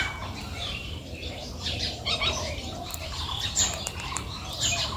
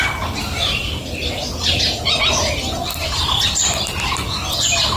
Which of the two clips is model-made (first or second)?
first